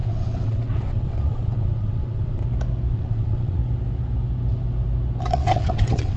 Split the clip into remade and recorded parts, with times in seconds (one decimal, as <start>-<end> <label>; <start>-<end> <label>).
0.0-2.4 remade; 2.4-2.9 recorded; 2.9-3.6 remade; 3.6-5.3 recorded; 5.3-6.2 remade